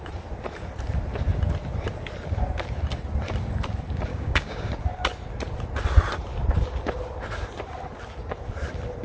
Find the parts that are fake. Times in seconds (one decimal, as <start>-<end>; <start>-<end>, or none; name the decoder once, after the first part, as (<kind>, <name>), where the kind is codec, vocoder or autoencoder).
4.1-4.7 (codec, DAC)